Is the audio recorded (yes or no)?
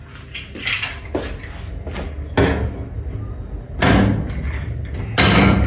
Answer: yes